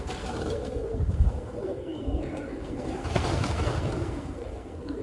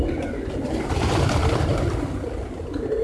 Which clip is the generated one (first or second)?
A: first